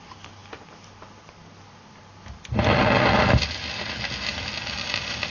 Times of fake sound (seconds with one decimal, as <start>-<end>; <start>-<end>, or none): none